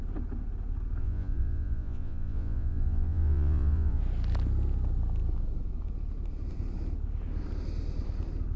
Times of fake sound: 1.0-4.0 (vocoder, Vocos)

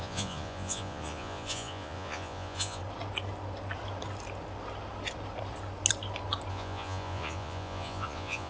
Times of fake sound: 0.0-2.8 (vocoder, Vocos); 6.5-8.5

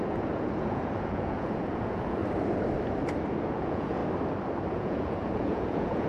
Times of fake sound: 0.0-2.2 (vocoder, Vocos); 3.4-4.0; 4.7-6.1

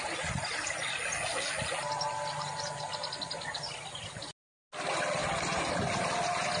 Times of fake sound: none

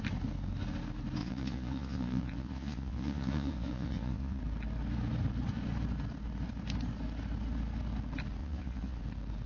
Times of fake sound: 1.2-4.4 (vocoder, Vocos); 8.4-9.0

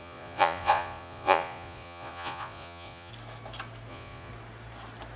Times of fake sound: 0.0-3.1 (vocoder, Vocos); 3.9-4.3

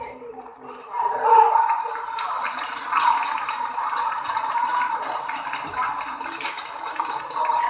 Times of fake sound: none

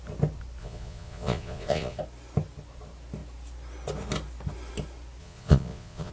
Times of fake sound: 0.6-2.0 (vocoder, Vocos); 5.2-6.1